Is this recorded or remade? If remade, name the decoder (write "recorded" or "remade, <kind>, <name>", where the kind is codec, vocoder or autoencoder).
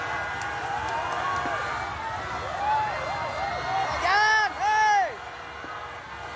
recorded